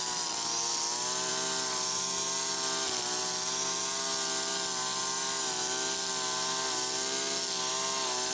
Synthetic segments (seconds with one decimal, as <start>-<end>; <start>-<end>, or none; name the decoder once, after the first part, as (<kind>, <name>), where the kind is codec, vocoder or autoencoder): none